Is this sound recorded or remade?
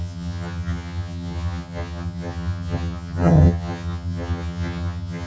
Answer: remade